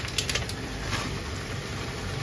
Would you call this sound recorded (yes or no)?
yes